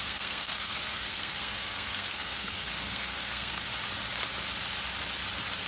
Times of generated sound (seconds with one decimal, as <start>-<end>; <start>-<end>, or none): 0.0-3.7